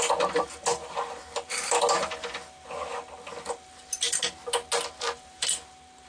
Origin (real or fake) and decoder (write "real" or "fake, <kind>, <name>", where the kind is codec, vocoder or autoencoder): real